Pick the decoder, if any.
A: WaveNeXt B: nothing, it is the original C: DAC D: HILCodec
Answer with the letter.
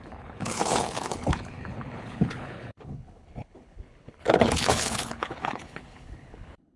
D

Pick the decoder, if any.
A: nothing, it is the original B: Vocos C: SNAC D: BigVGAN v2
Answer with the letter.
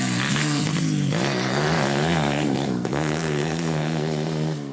C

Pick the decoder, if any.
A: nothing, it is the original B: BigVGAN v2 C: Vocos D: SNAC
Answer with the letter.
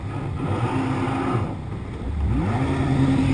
A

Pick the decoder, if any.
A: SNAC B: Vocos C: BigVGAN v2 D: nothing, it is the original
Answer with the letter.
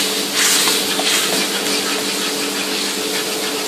D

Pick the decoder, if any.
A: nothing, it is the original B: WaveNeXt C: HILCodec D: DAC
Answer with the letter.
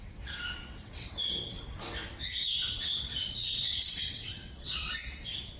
B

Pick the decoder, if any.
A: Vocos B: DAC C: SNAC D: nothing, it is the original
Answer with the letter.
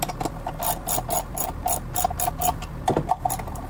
D